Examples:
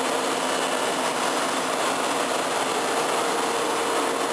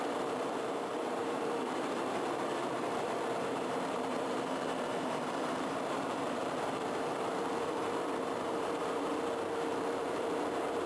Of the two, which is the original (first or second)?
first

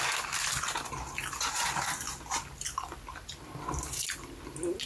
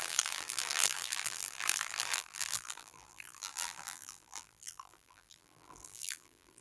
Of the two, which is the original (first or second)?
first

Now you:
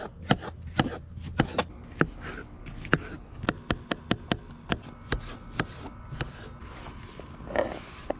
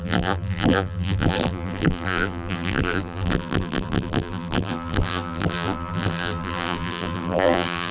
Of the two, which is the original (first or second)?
first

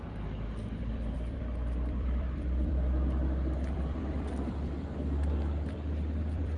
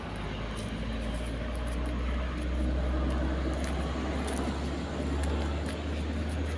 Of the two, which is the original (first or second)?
second